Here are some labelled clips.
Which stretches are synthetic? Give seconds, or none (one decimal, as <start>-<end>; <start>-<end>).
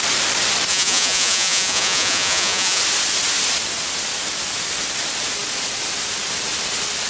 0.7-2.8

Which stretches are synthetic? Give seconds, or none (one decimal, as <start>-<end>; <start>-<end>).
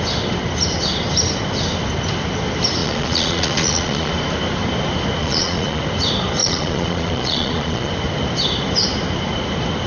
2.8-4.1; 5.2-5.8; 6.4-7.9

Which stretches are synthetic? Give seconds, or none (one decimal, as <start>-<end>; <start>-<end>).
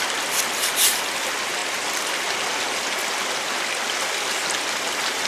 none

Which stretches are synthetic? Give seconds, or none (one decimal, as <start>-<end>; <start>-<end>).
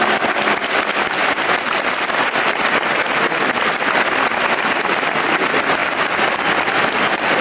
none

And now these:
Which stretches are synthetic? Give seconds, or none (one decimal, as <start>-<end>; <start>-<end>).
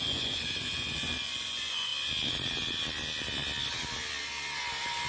0.0-1.9